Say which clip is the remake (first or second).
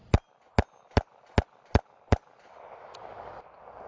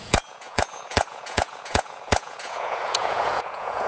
second